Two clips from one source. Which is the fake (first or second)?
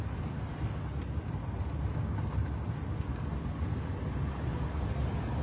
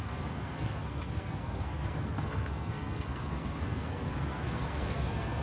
second